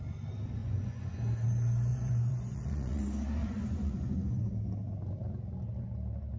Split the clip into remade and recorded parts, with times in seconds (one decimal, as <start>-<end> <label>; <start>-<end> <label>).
0.0-0.6 recorded; 0.6-1.2 remade; 1.2-1.9 recorded; 1.9-3.0 remade; 3.0-3.4 recorded; 3.4-4.5 remade; 4.5-6.4 recorded